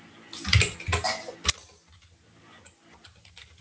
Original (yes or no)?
yes